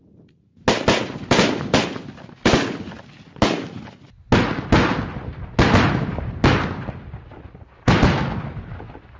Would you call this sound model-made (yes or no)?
no